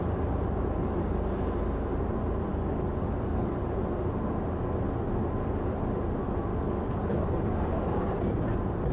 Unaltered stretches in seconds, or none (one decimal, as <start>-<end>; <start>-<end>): 0.0-2.5; 3.6-6.5; 7.0-8.9